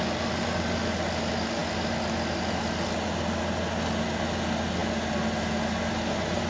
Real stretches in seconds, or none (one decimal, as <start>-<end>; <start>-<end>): 0.0-6.5